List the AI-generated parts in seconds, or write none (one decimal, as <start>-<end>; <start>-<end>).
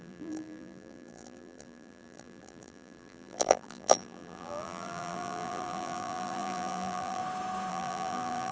0.0-7.2; 7.7-8.5